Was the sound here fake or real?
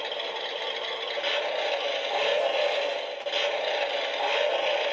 real